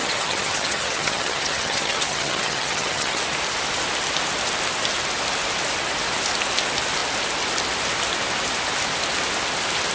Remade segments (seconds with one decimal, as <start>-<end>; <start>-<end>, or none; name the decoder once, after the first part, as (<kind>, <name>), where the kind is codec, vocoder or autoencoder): 0.0-3.2 (vocoder, HiFi-GAN)